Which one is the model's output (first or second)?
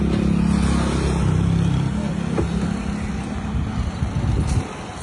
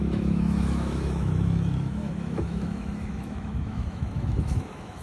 second